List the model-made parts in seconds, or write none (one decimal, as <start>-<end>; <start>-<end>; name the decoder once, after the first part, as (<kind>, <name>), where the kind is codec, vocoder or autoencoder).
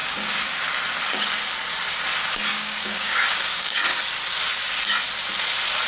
0.0-0.6 (codec, DAC); 2.5-4.0